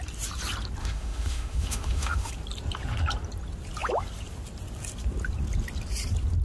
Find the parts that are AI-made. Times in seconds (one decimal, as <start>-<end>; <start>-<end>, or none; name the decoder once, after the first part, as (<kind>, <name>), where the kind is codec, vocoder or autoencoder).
0.8-2.3 (autoencoder, DAC-VAE)